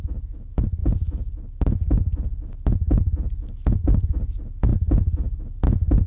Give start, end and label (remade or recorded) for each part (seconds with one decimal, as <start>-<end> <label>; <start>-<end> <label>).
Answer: 0.0-6.1 recorded